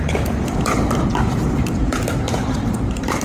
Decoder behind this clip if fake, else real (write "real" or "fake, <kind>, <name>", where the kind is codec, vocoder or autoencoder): fake, vocoder, BigVGAN v2